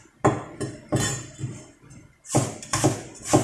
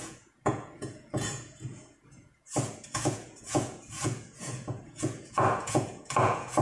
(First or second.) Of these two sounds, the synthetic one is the second